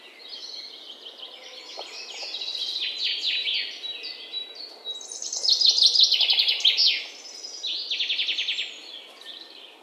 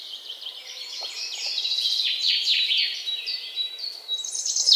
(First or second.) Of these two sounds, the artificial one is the second